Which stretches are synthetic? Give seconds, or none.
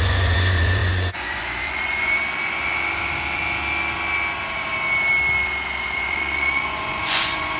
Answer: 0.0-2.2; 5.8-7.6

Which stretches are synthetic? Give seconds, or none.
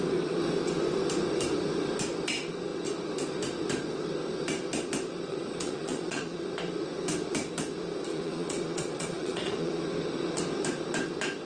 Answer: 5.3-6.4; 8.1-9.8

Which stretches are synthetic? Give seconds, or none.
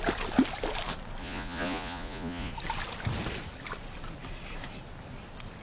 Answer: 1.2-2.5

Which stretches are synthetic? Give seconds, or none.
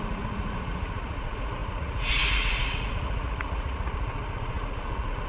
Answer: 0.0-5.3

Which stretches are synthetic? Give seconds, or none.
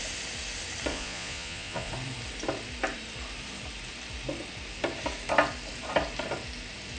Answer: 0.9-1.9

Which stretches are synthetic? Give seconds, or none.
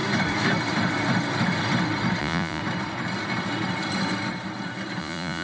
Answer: 2.2-2.6; 5.0-5.4